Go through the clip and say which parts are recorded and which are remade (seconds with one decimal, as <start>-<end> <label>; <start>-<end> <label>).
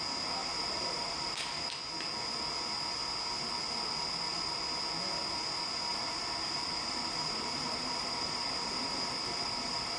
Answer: 0.0-0.4 recorded; 0.4-1.6 remade; 1.6-5.9 recorded; 5.9-10.0 remade